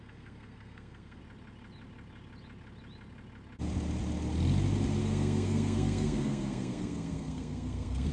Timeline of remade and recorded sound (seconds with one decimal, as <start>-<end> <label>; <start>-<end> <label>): 0.0-1.2 remade; 1.2-5.0 recorded; 5.0-8.1 remade